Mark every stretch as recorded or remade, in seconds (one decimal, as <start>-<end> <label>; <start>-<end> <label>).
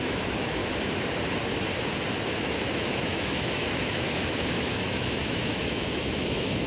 0.0-0.6 remade; 0.6-2.5 recorded; 2.5-6.7 remade